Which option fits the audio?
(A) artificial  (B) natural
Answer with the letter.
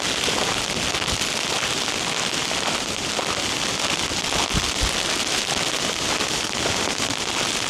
B